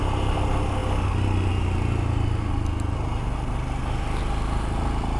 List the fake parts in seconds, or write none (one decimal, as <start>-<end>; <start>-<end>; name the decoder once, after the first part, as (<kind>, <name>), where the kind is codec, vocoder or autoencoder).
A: none